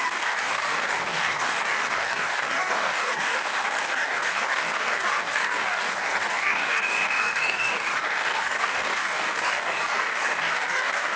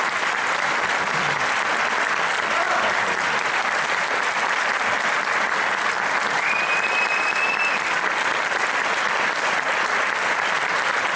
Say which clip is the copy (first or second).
first